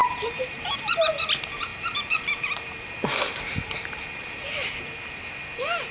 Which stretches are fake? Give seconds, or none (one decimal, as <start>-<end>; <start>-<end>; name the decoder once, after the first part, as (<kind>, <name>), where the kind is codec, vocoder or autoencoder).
0.0-1.0 (vocoder, BigVGAN v2); 1.7-5.2